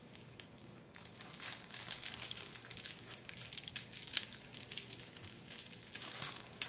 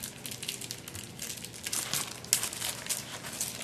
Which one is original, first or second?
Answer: second